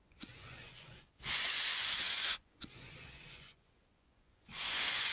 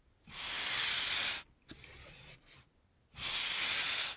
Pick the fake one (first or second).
first